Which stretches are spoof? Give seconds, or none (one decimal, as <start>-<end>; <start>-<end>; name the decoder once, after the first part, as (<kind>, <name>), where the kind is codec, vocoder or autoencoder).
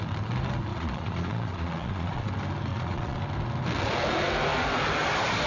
0.7-2.3 (vocoder, Vocos); 2.7-3.2